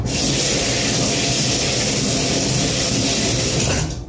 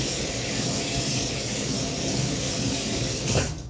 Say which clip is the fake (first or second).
second